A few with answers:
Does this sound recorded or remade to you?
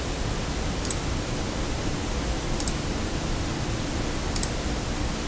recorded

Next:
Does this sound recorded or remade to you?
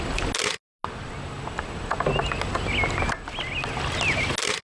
recorded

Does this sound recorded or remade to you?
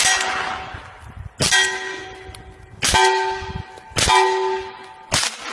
recorded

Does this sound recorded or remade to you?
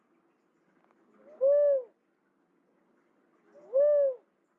recorded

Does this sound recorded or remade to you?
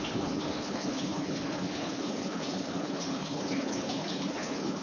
remade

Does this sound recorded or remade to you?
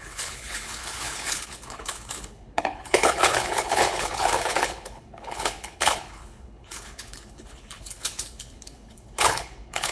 remade